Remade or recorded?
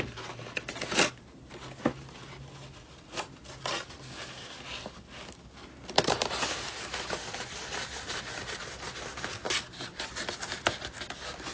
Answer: recorded